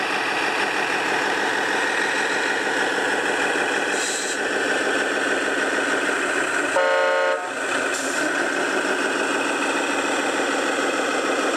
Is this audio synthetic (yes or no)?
no